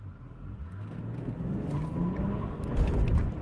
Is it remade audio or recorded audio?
recorded